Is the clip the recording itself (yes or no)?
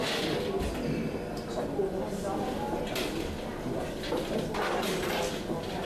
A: yes